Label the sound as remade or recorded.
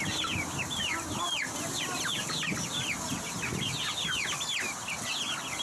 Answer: recorded